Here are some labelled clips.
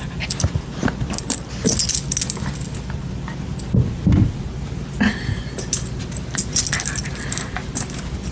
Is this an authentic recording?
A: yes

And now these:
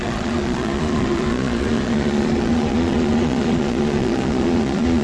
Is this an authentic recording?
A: no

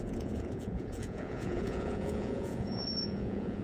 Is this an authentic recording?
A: no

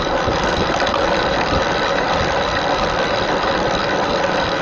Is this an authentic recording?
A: yes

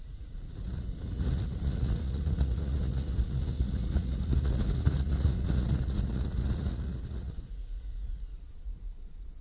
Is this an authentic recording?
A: no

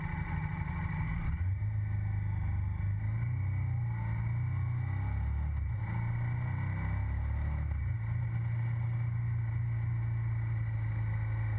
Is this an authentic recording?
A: yes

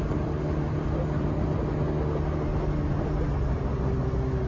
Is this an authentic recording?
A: yes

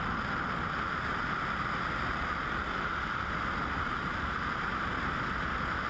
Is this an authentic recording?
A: yes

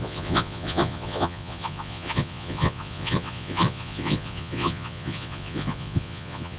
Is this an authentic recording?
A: no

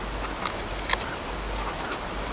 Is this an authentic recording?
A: yes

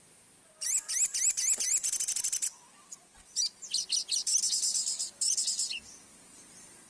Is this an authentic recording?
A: yes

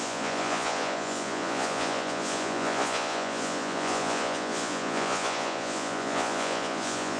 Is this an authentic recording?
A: no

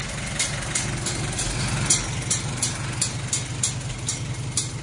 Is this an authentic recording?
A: yes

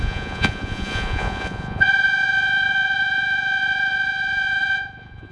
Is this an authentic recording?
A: no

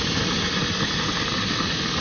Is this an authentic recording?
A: yes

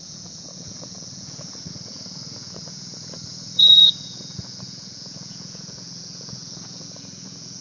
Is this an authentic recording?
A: no